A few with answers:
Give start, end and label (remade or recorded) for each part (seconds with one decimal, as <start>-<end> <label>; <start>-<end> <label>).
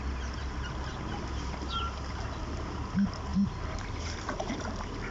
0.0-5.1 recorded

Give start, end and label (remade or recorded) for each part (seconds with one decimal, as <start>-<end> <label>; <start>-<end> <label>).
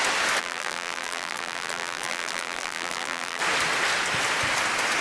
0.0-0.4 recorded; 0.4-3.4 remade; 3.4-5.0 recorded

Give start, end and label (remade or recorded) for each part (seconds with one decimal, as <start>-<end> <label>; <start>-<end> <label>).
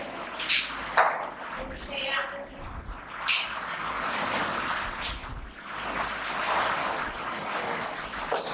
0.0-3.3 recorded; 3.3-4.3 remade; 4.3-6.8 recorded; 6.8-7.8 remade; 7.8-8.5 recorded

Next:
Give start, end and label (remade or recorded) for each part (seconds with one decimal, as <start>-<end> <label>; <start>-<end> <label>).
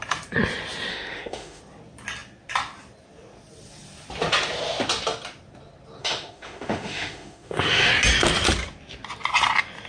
0.0-0.9 recorded; 0.9-1.6 remade; 1.6-6.0 recorded; 6.0-7.9 remade; 7.9-9.9 recorded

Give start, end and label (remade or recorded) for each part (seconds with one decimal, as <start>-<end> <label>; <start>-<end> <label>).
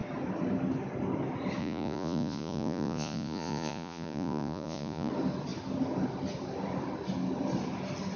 0.0-1.6 recorded; 1.6-5.1 remade; 5.1-8.2 recorded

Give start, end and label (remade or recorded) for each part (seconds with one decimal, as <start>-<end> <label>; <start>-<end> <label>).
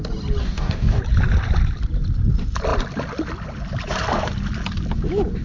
0.0-0.4 recorded; 0.4-1.0 remade; 1.0-5.4 recorded